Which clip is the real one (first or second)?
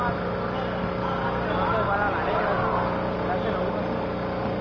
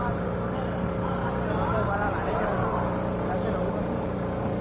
first